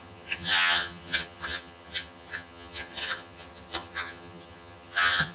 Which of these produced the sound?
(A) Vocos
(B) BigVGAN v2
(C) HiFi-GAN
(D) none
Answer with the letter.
C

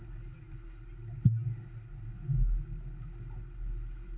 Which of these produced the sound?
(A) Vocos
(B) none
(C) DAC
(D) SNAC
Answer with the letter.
B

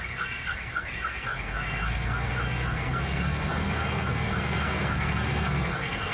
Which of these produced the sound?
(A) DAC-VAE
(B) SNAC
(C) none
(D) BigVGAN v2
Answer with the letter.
B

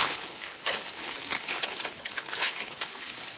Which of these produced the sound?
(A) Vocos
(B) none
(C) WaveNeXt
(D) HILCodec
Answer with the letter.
D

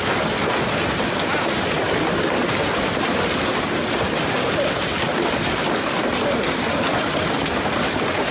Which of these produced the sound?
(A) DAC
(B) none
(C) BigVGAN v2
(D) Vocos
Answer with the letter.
B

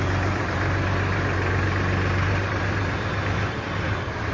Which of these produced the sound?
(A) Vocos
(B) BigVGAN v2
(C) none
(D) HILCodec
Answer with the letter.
B